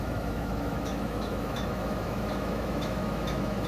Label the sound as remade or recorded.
remade